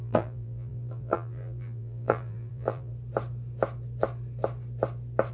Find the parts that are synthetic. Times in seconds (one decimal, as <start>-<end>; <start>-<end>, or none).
0.0-2.9